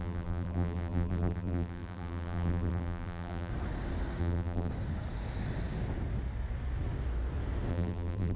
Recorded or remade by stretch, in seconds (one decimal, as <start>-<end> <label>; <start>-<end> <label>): 0.0-3.5 remade; 3.5-4.2 recorded; 4.2-4.7 remade; 4.7-7.7 recorded; 7.7-8.4 remade